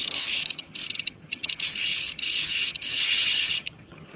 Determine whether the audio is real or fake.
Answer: fake